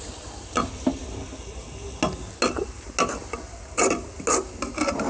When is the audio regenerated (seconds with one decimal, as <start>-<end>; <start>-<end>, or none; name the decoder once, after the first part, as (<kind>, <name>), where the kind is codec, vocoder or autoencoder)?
none